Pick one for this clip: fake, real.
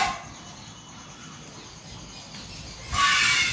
real